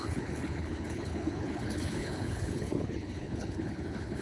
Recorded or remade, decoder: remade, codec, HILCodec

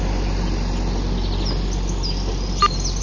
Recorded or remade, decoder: recorded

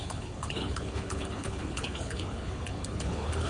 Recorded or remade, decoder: remade, codec, HILCodec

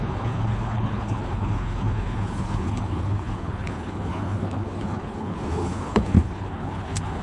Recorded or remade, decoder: remade, codec, HILCodec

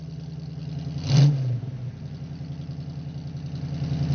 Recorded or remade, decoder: recorded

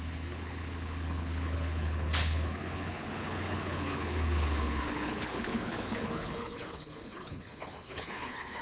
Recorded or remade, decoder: remade, codec, HILCodec